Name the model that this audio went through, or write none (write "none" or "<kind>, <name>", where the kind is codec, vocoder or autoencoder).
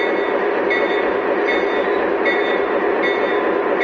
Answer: none